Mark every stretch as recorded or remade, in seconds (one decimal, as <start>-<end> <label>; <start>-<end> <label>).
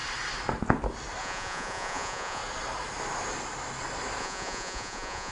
0.0-1.2 recorded; 1.2-2.4 remade; 2.4-4.2 recorded; 4.2-5.3 remade